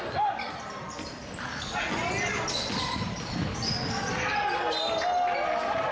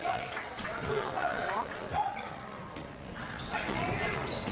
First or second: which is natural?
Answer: first